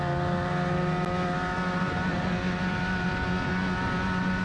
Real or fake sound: real